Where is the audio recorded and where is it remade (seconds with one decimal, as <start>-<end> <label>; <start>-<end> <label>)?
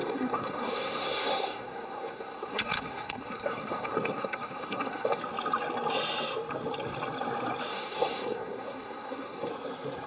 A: 0.0-5.2 remade; 5.2-7.7 recorded; 7.7-9.5 remade; 9.5-10.1 recorded